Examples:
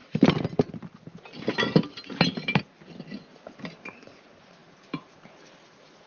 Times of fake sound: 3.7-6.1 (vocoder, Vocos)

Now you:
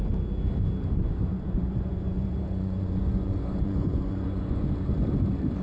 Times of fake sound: 1.3-4.7 (vocoder, Vocos)

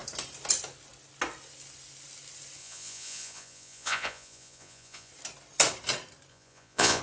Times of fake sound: 2.6-5.1 (vocoder, Vocos); 6.3-7.0

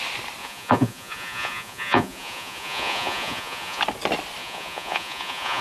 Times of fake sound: 0.4-3.8 (vocoder, Vocos); 4.4-5.6